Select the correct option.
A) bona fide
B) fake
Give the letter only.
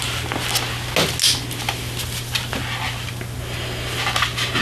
A